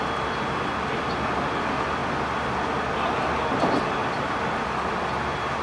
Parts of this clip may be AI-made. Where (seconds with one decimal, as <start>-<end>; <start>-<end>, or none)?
4.0-5.0